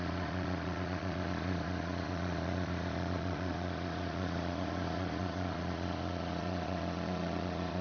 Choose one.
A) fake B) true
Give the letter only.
A